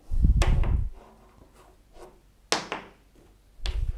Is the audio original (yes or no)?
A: yes